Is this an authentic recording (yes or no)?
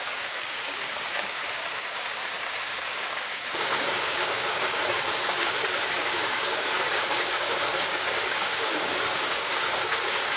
no